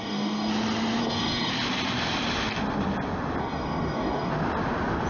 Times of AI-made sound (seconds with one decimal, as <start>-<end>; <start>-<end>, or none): 0.0-0.5; 1.0-1.5; 3.4-4.3